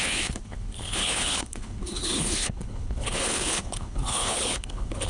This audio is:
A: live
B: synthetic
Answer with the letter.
B